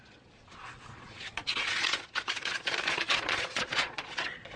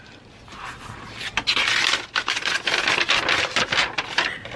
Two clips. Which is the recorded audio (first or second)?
second